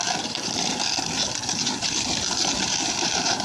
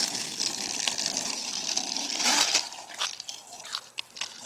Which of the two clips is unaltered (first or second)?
second